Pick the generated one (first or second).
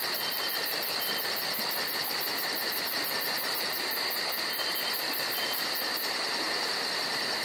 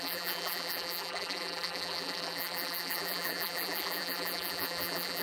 second